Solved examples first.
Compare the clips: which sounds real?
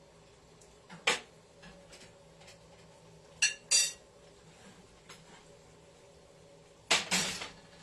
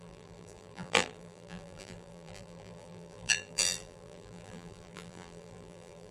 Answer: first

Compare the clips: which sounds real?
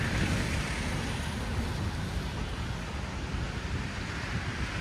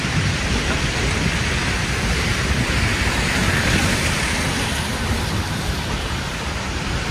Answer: first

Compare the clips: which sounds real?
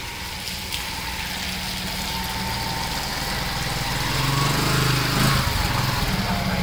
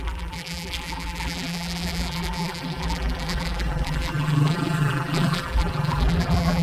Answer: first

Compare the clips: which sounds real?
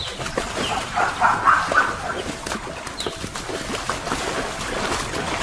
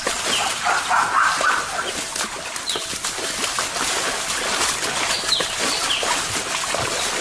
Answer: first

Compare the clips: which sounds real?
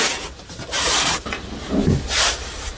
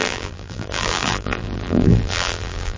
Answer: first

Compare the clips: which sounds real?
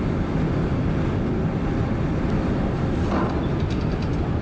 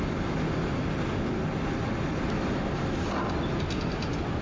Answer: second